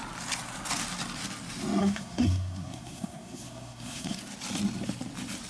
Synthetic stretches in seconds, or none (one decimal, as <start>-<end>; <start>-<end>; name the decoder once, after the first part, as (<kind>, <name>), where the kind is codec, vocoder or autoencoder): 1.8-4.2 (codec, SNAC)